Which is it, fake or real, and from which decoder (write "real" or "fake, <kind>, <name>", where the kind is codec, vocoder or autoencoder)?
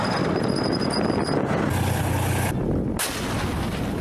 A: real